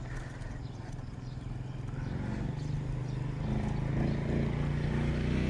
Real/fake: real